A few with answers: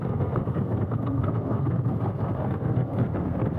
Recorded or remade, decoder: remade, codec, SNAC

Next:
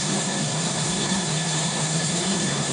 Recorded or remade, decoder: remade, codec, SNAC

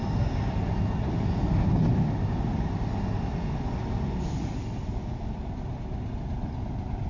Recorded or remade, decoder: recorded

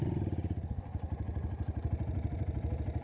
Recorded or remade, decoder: recorded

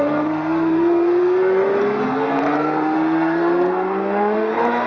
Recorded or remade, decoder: remade, codec, SNAC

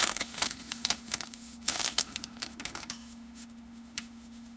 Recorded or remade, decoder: remade, autoencoder, DAC-VAE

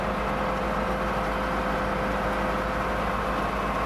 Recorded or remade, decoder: recorded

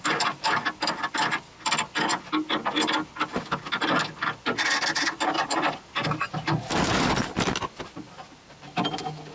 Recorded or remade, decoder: recorded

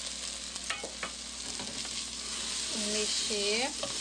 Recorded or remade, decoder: recorded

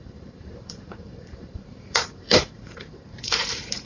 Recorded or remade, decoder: remade, vocoder, BigVGAN v2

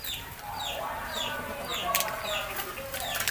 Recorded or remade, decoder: recorded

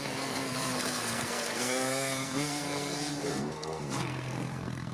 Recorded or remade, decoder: remade, codec, SNAC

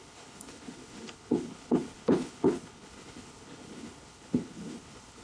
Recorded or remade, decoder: remade, codec, HILCodec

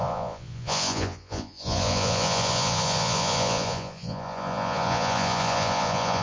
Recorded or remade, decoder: remade, vocoder, Vocos